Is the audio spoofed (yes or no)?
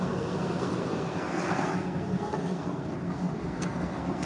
yes